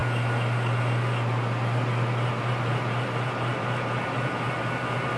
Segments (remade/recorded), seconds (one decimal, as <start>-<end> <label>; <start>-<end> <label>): 0.0-5.2 recorded